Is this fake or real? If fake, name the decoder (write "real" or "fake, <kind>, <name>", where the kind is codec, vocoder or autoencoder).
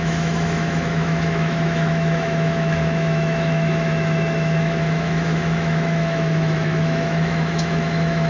fake, autoencoder, DAC-VAE